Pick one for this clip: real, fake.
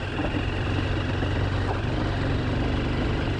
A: real